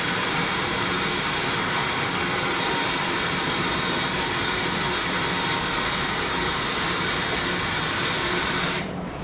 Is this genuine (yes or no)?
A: no